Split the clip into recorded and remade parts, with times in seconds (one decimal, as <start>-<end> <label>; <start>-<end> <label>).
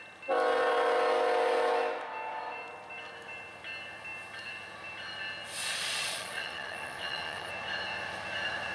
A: 0.0-5.6 recorded; 5.6-7.5 remade; 7.5-8.7 recorded